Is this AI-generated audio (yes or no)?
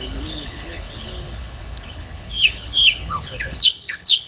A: yes